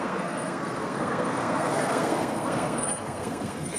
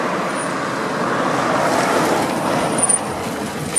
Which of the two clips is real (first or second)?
second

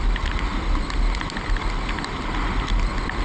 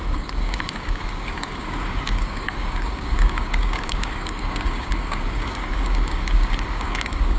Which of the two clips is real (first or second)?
first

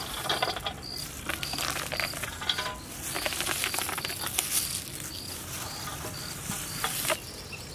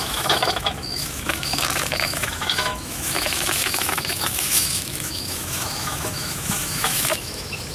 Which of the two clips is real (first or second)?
first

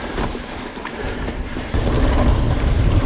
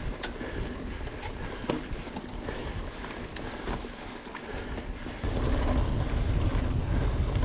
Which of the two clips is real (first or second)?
second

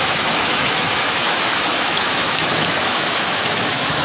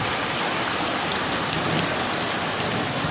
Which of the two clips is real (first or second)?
second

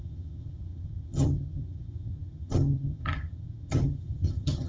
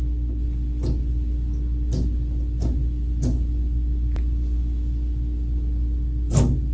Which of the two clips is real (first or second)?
second